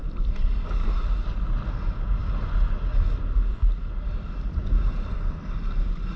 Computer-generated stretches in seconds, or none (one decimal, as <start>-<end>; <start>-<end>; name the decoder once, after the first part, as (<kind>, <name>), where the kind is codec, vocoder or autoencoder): none